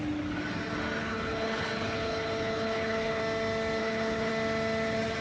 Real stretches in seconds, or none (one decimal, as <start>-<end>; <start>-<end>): 0.0-1.0; 3.2-3.8; 4.3-5.2